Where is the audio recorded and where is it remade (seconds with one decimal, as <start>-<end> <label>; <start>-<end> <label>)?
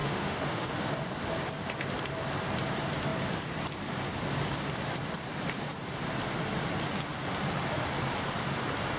0.0-0.9 remade; 0.9-9.0 recorded